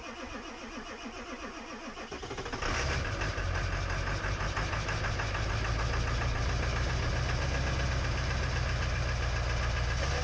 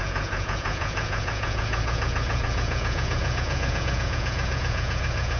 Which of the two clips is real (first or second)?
first